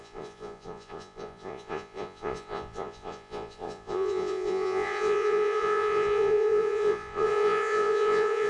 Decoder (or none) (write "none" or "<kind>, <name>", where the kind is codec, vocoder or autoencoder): vocoder, Vocos